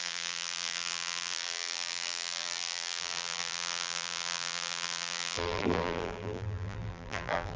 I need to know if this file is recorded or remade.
remade